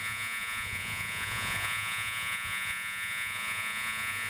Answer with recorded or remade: remade